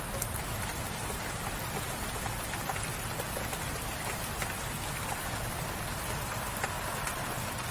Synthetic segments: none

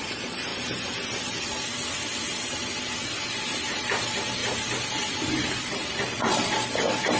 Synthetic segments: none

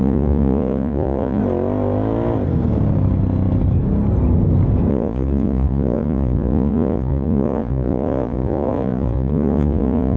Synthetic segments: 0.0-1.4 (vocoder, Vocos); 4.9-10.2

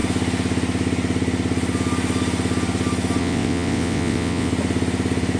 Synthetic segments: 3.2-4.5 (vocoder, WaveNeXt)

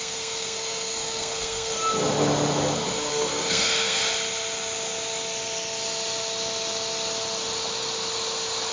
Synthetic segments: 0.0-1.8 (codec, SNAC); 3.1-4.0

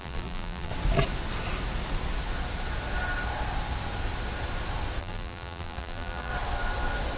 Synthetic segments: 0.0-0.7 (vocoder, BigVGAN v2); 5.0-6.3